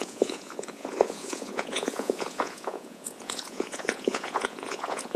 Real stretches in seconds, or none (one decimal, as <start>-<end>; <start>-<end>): none